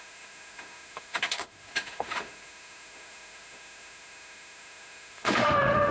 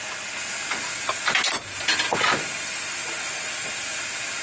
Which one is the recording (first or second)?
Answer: second